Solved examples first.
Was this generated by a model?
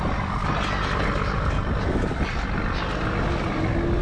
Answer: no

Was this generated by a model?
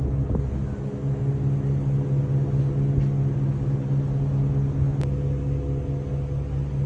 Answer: no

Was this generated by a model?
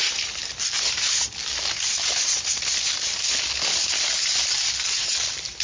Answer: no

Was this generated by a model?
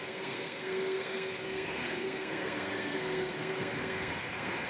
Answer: yes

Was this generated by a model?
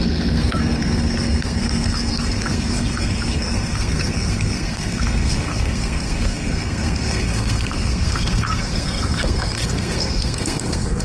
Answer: yes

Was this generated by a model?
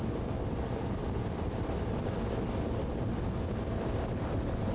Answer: no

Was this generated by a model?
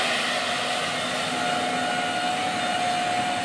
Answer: no